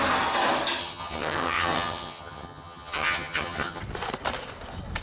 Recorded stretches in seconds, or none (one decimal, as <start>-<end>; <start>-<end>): 0.0-0.8; 3.8-5.0